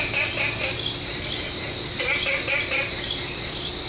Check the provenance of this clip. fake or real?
real